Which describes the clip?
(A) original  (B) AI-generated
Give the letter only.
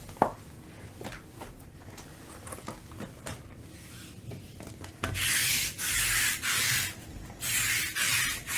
A